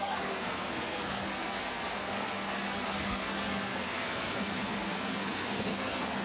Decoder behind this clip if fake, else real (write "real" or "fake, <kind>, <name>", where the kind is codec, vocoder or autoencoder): fake, codec, SNAC